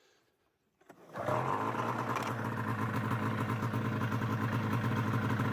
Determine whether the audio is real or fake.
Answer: real